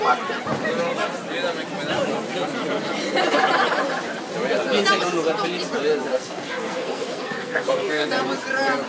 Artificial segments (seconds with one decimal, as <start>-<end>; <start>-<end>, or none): 6.1-8.1